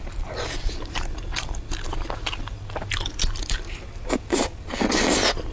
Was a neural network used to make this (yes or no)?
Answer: no